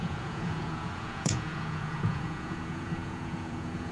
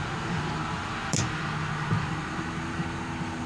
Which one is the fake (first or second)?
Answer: first